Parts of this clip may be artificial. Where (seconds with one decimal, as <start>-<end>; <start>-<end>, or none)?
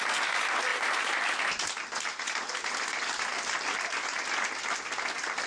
none